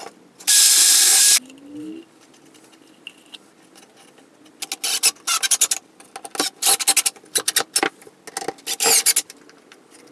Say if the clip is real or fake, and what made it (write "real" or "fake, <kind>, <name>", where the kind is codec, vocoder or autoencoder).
real